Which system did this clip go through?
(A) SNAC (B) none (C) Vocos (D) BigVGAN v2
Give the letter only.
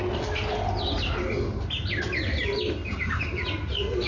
B